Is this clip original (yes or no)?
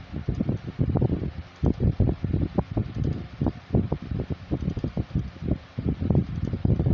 yes